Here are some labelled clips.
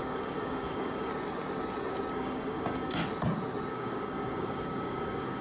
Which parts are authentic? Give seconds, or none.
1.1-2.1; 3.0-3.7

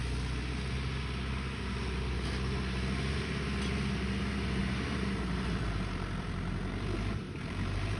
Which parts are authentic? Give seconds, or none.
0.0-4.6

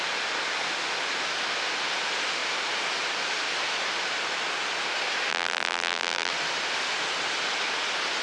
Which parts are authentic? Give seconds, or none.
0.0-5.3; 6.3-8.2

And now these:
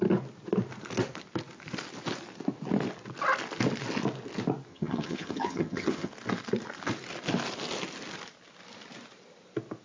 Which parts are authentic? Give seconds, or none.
0.0-4.7; 6.1-9.8

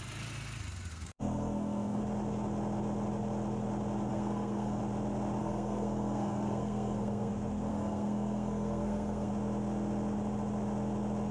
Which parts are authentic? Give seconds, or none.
0.0-0.9; 2.0-4.1; 4.8-5.4; 7.3-7.7; 9.3-11.3